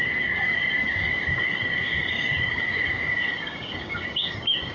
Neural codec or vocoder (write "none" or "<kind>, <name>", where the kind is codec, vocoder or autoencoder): codec, DAC